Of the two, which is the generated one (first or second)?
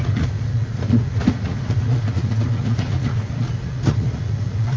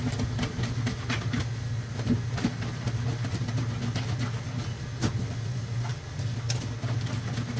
first